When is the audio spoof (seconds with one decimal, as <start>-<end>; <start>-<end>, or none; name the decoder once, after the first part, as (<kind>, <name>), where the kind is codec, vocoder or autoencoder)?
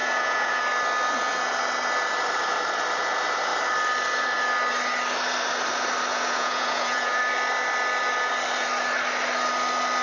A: 0.0-0.6 (vocoder, Vocos); 6.1-7.2